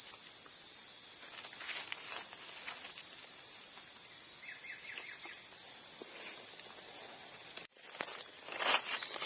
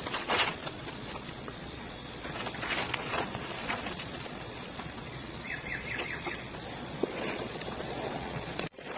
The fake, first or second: second